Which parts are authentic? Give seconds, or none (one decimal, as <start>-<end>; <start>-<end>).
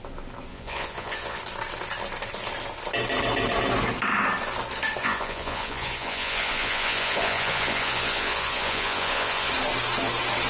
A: 0.0-0.5; 1.4-5.0; 9.5-10.5